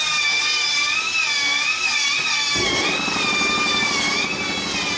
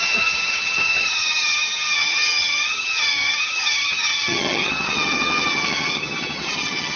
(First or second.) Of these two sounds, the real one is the first